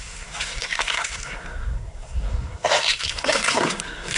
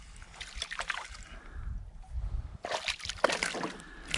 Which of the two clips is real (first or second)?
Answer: second